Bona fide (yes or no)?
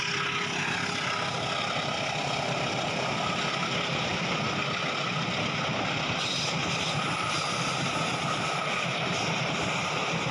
yes